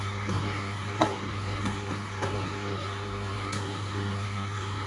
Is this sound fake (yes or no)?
yes